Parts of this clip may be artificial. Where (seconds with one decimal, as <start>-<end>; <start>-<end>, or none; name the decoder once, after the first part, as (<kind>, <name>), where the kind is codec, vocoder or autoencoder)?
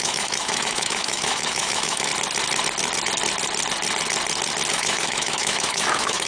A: 0.0-2.1 (autoencoder, DAC-VAE); 4.7-6.3